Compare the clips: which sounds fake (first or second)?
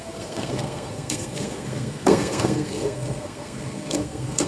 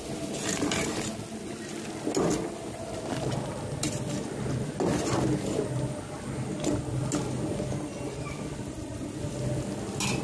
first